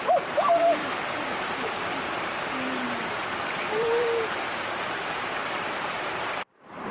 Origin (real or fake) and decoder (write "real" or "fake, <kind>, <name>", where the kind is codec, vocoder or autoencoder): fake, vocoder, BigVGAN v2